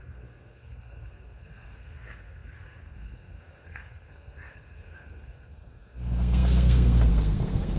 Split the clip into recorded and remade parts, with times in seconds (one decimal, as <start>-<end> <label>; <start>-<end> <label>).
0.0-7.8 remade